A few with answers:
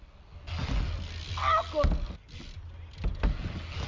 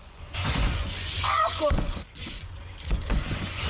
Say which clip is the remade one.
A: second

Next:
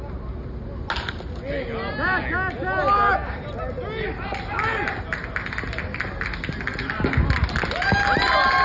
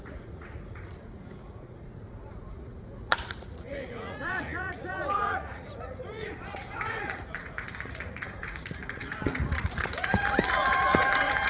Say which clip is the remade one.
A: second